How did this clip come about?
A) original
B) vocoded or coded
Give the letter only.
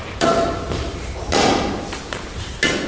A